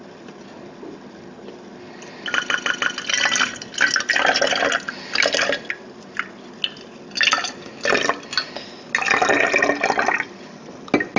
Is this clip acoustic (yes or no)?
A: yes